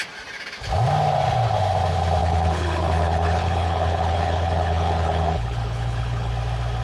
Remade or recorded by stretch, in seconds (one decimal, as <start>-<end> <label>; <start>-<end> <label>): 0.0-2.2 recorded; 2.2-6.3 remade; 6.3-6.8 recorded